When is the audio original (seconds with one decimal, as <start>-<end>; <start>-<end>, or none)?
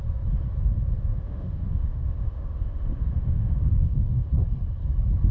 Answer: 0.0-1.1; 4.3-5.3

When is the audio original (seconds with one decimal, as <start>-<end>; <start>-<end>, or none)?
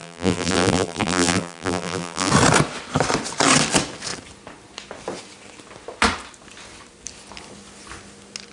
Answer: 2.3-8.5